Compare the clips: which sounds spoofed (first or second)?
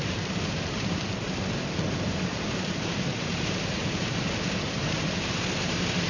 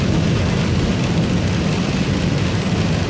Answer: first